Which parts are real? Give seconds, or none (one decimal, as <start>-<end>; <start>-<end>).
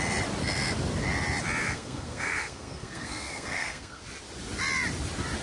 0.0-1.6; 4.0-5.4